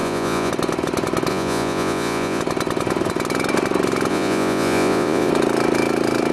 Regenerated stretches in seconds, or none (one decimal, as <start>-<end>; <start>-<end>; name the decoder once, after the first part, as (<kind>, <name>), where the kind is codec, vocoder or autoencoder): 0.0-0.5 (vocoder, Vocos); 1.3-2.4; 4.1-5.3